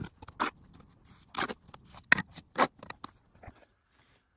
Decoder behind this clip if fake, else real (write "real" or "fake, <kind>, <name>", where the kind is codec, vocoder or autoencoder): real